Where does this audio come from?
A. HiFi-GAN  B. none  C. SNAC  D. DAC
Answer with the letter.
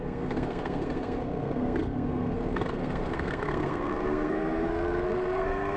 C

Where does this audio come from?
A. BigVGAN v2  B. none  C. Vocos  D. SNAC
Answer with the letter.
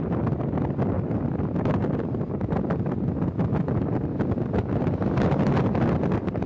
B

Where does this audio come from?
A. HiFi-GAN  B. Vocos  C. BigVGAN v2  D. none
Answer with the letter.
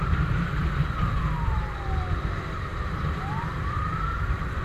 C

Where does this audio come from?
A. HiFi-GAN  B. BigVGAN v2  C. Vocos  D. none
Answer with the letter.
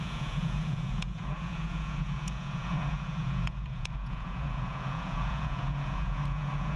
C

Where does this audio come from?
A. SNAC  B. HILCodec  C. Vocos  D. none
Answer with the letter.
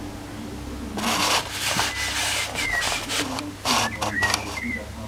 D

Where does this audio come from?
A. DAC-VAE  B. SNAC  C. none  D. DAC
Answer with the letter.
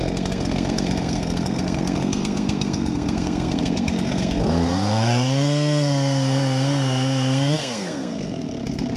B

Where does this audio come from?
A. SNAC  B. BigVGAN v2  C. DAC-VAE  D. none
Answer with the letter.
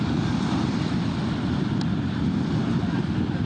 D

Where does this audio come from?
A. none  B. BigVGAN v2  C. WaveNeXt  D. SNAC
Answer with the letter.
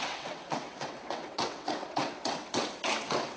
C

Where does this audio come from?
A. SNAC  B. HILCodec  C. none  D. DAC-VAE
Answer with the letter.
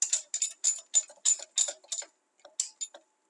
C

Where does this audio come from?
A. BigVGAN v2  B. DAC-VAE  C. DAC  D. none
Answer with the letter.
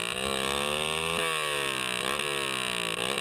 D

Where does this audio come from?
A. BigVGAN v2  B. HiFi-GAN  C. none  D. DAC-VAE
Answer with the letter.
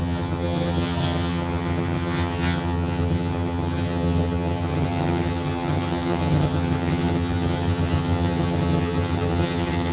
B